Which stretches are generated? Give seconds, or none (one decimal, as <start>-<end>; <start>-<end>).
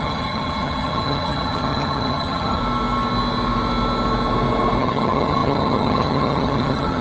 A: 0.0-2.6; 4.8-7.0